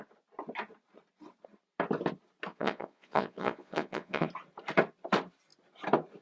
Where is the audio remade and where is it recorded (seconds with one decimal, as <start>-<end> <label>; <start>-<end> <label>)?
0.0-2.5 recorded; 2.5-4.3 remade; 4.3-6.2 recorded